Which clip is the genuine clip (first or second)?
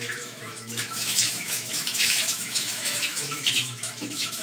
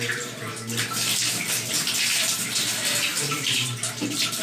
second